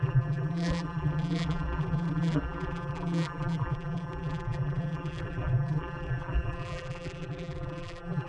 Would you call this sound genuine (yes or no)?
no